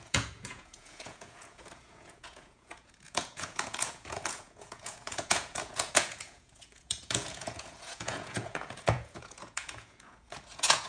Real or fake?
fake